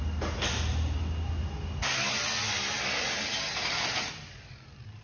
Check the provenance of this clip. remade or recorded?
recorded